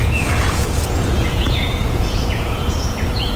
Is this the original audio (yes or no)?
no